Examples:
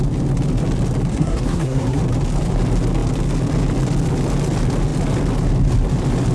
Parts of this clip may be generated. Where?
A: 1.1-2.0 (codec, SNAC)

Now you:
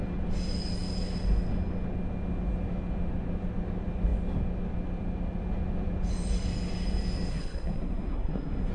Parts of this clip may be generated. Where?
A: 7.3-8.7 (codec, SNAC)

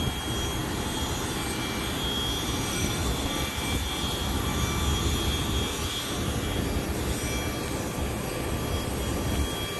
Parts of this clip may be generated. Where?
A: 2.7-3.5 (codec, SNAC)